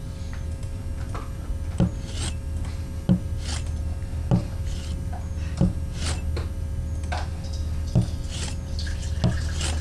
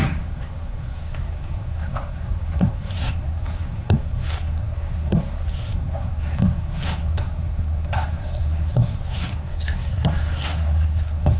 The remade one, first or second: second